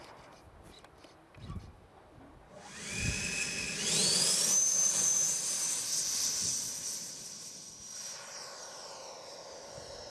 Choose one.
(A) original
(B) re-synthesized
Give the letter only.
A